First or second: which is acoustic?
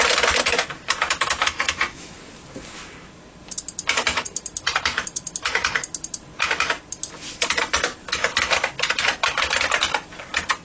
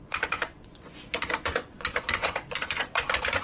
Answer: first